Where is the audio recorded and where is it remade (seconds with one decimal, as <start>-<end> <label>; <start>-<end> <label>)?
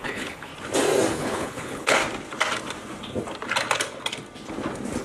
0.0-0.5 remade; 0.5-1.1 recorded; 1.1-2.0 remade; 2.0-5.0 recorded